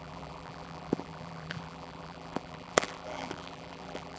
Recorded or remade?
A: remade